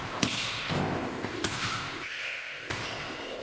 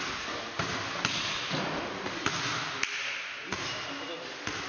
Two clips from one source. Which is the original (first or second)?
second